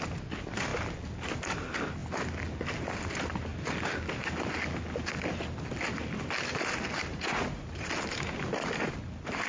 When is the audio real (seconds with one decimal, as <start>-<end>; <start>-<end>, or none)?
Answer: 0.0-7.1; 7.9-9.5